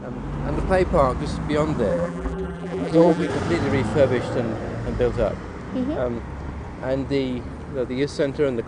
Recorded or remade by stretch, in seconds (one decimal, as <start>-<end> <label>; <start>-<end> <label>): 0.0-1.9 recorded; 1.9-3.3 remade; 3.3-8.7 recorded